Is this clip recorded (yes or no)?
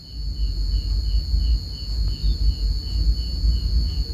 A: yes